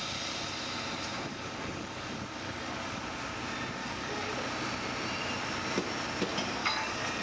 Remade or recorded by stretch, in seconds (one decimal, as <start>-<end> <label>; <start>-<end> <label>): 0.0-1.3 recorded; 1.3-3.0 remade; 3.0-3.8 recorded; 3.8-4.3 remade; 4.3-6.6 recorded; 6.6-7.2 remade